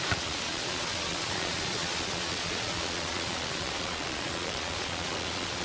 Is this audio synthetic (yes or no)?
yes